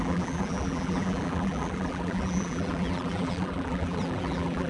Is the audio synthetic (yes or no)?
yes